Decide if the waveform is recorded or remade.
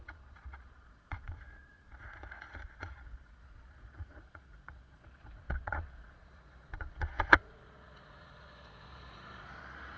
remade